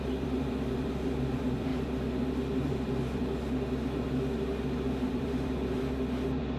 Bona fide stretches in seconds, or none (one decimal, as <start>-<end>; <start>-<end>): 1.7-2.6; 3.2-5.1